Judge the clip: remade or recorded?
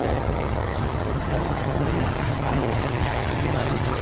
remade